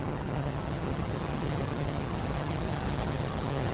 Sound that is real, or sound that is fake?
fake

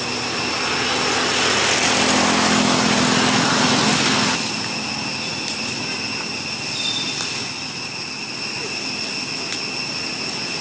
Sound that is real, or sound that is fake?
real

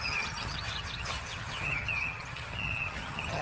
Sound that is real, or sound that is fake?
fake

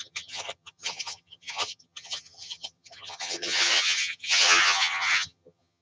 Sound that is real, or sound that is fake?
fake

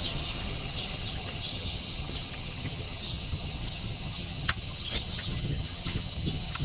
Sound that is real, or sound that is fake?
fake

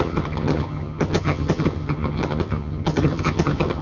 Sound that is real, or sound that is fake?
fake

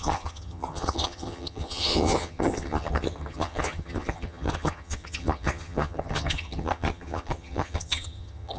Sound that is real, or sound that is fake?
fake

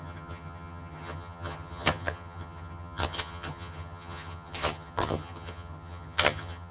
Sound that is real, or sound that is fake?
fake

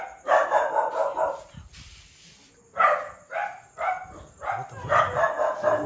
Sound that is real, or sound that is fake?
real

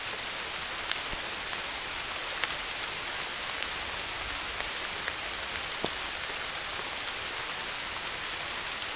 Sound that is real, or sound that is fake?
real